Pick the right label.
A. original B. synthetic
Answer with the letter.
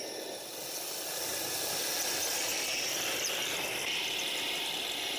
A